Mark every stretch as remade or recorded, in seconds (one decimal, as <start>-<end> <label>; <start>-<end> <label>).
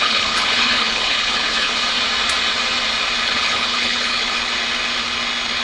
0.0-1.7 remade; 1.7-3.2 recorded; 3.2-4.4 remade; 4.4-5.6 recorded